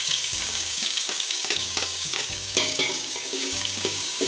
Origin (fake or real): fake